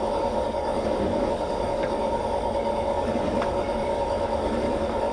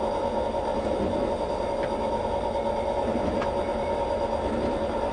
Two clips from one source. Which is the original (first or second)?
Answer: second